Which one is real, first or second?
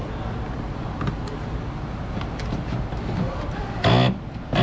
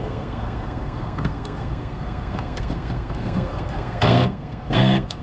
first